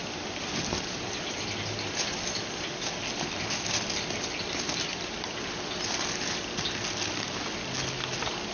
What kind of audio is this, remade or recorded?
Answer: recorded